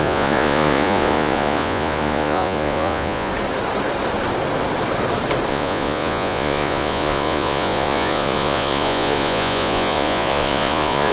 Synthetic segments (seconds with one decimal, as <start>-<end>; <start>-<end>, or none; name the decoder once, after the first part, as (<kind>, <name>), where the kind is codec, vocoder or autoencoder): 0.0-3.3 (vocoder, Vocos); 5.5-11.1